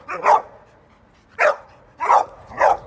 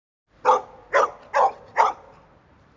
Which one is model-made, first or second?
first